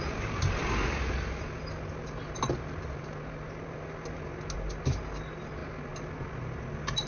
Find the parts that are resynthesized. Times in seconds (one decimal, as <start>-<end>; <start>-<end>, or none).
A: none